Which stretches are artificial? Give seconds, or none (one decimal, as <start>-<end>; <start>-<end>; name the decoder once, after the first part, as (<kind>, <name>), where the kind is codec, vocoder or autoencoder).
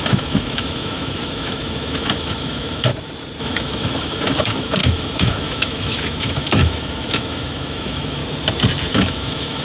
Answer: 0.0-2.9 (autoencoder, DAC-VAE); 3.4-8.2; 8.9-9.6